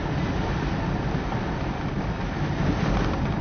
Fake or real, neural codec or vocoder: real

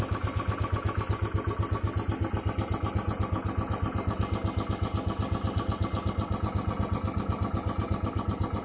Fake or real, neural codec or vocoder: real